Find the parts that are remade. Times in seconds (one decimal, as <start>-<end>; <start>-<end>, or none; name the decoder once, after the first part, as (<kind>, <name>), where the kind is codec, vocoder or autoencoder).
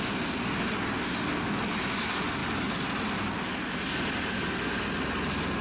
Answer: none